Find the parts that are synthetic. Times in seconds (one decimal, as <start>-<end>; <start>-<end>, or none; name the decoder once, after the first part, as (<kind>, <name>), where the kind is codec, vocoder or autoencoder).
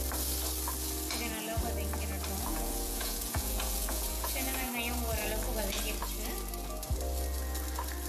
2.4-4.7 (vocoder, Vocos)